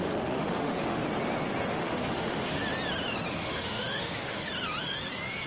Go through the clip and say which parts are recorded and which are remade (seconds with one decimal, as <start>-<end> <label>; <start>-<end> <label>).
0.0-1.0 remade; 1.0-1.7 recorded; 1.7-2.6 remade; 2.6-3.3 recorded; 3.3-4.5 remade; 4.5-5.5 recorded

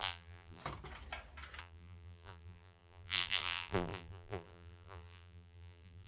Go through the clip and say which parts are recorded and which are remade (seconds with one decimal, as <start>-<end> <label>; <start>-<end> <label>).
0.0-0.6 remade; 0.6-1.6 recorded; 1.6-6.1 remade

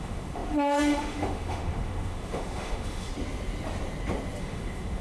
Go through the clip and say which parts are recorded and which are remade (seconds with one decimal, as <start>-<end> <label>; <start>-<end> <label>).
0.0-3.1 remade; 3.1-4.4 recorded; 4.4-5.0 remade

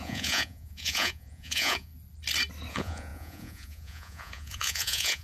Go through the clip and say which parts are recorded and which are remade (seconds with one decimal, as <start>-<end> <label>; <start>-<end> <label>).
0.0-1.9 remade; 1.9-2.7 recorded; 2.7-5.2 remade

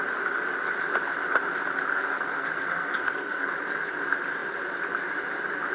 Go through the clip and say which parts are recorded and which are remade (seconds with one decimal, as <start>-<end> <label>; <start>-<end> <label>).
0.0-1.9 recorded; 1.9-3.5 remade; 3.5-5.7 recorded

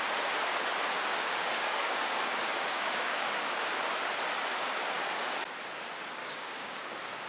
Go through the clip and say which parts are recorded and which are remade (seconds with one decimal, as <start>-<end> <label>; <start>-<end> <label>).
0.0-1.1 recorded; 1.1-3.6 remade; 3.6-6.2 recorded; 6.2-7.3 remade

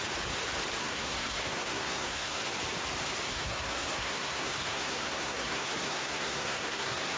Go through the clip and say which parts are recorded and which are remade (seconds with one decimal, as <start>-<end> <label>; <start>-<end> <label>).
0.0-0.8 recorded; 0.8-2.4 remade; 2.4-3.3 recorded; 3.3-7.2 remade